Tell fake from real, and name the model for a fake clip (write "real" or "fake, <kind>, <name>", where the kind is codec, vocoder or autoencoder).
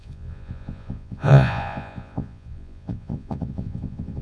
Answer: fake, vocoder, Vocos